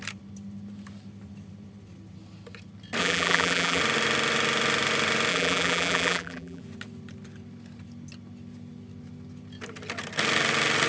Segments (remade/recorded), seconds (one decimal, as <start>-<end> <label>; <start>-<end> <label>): 0.0-3.0 recorded; 3.0-3.8 remade; 3.8-5.3 recorded; 5.3-6.6 remade; 6.6-10.9 recorded